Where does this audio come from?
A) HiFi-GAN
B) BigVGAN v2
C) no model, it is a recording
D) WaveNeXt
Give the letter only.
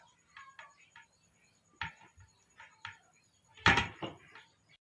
C